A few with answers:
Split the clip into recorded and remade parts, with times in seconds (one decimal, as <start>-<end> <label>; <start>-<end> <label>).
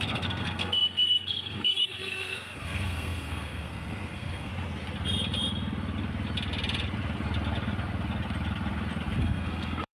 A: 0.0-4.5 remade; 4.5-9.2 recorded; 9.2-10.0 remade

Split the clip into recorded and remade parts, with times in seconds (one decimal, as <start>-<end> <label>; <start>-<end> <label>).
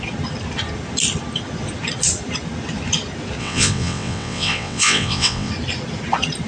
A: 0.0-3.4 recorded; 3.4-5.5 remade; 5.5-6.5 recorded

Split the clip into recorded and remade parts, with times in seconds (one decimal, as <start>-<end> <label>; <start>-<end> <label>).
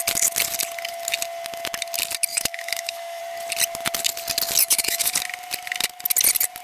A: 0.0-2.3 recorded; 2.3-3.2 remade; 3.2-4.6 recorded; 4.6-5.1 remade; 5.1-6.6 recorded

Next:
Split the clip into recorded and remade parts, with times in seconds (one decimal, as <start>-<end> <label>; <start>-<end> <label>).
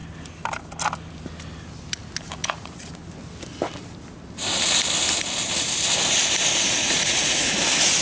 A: 0.0-2.4 recorded; 2.4-2.9 remade; 2.9-6.8 recorded; 6.8-7.5 remade; 7.5-8.0 recorded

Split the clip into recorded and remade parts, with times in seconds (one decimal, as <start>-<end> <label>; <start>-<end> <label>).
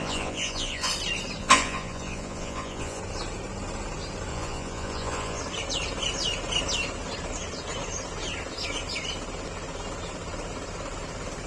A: 0.0-0.9 remade; 0.9-1.4 recorded; 1.4-3.0 remade; 3.0-4.3 recorded; 4.3-5.4 remade; 5.4-11.5 recorded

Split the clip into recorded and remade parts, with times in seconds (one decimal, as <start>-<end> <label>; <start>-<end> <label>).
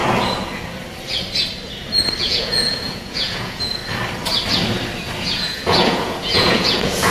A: 0.0-2.2 recorded; 2.2-3.8 remade; 3.8-5.2 recorded; 5.2-7.1 remade